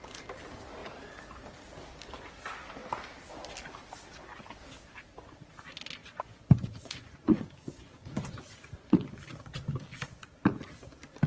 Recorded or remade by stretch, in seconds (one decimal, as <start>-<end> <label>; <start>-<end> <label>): 0.0-6.0 recorded; 6.0-9.2 remade; 9.2-11.3 recorded